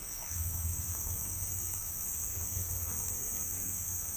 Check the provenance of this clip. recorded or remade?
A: remade